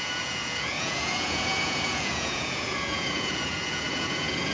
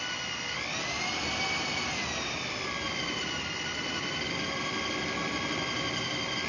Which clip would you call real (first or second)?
second